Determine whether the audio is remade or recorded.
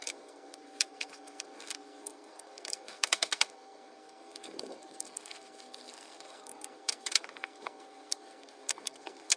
remade